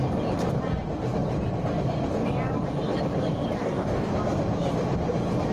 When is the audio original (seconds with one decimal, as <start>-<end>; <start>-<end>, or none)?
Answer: 0.0-3.6; 4.1-5.5